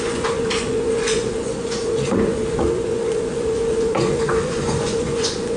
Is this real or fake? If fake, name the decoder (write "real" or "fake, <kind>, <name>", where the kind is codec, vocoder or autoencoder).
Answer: fake, vocoder, Vocos